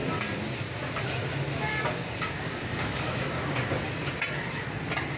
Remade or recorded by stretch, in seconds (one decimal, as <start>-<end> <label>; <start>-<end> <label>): 0.0-1.7 recorded; 1.7-3.8 remade; 3.8-5.2 recorded